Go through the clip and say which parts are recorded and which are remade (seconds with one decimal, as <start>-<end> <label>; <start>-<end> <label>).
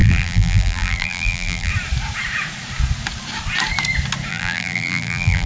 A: 0.0-1.7 remade; 1.7-4.3 recorded; 4.3-5.5 remade